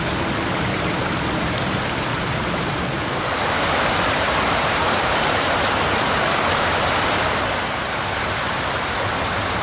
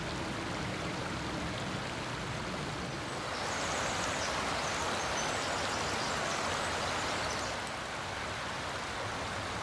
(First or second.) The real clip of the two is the second